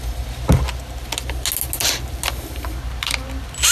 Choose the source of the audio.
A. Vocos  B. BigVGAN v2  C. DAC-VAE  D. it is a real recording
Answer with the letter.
D